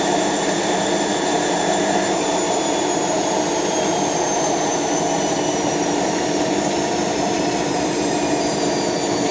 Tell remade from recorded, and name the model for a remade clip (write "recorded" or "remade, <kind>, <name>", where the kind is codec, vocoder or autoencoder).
remade, vocoder, BigVGAN v2